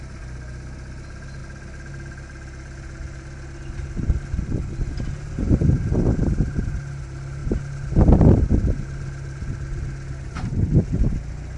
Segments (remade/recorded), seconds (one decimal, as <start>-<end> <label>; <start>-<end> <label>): 0.0-11.6 recorded